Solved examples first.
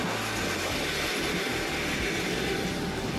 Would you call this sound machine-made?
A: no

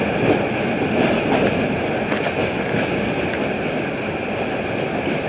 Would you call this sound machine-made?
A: no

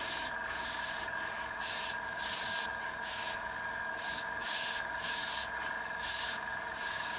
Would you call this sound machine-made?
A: yes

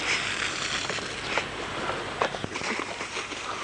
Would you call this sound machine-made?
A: no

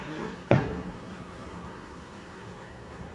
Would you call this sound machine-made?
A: yes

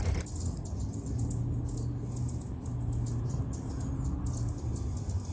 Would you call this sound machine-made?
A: no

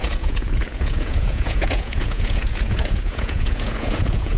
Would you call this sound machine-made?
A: yes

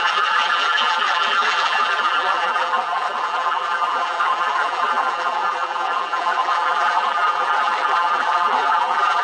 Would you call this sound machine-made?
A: yes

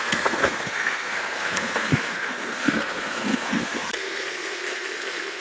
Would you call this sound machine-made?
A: yes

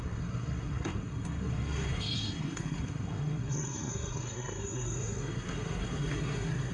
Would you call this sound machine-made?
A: yes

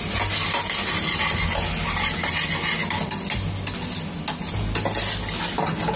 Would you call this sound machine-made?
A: no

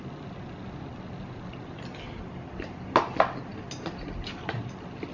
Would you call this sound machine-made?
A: no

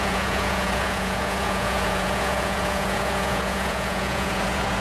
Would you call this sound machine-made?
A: yes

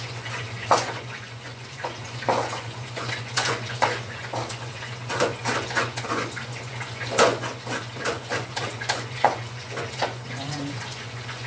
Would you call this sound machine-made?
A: yes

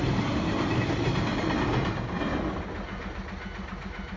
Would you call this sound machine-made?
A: no